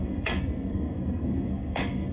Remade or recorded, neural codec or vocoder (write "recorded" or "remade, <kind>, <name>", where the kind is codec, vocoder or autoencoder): remade, codec, SNAC